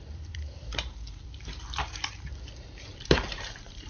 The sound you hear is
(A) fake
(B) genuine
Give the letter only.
A